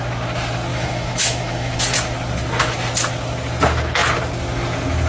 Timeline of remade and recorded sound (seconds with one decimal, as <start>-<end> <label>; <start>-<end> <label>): 0.0-0.7 recorded; 0.7-1.8 remade; 1.8-5.1 recorded